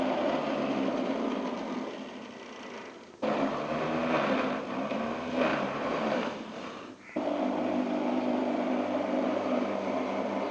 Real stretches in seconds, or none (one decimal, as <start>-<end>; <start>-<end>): 0.0-5.5